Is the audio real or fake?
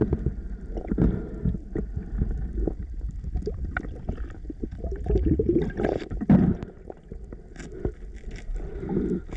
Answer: real